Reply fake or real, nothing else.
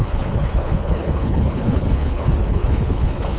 fake